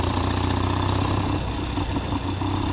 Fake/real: real